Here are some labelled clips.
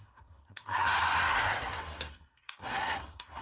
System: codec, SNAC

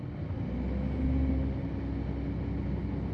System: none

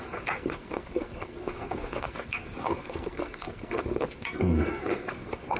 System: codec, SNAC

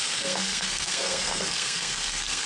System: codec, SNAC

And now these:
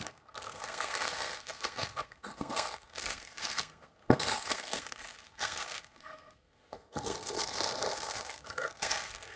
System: codec, SNAC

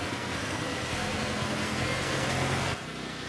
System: codec, SNAC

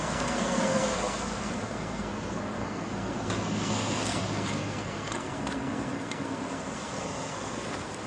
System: codec, SNAC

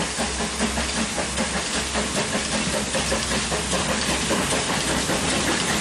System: none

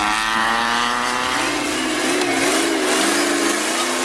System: none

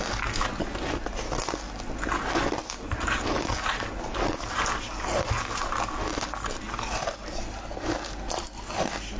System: none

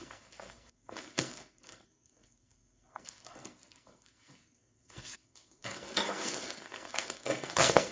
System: codec, SNAC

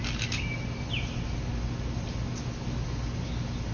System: none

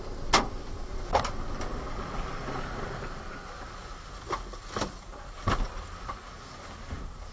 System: none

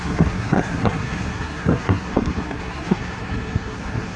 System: codec, SNAC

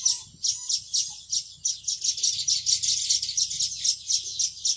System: none